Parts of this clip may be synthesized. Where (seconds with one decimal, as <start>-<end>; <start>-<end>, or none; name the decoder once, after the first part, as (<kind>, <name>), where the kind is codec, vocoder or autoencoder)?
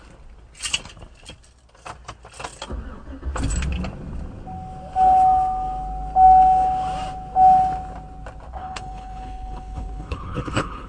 8.6-10.9 (codec, HILCodec)